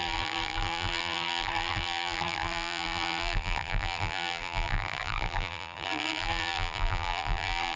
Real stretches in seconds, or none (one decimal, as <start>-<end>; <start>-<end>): none